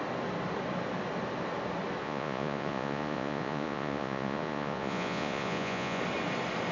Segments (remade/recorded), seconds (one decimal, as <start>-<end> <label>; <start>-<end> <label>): 0.0-2.0 recorded; 2.0-6.0 remade; 6.0-6.7 recorded